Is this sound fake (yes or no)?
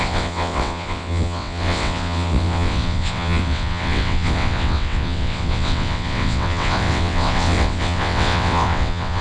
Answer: yes